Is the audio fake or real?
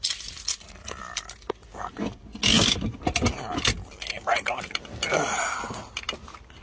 real